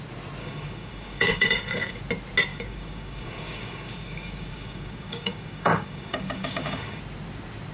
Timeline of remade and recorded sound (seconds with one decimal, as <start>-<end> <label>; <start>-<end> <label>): 0.0-0.4 recorded; 0.4-2.0 remade; 2.0-2.5 recorded; 2.5-7.0 remade; 7.0-7.7 recorded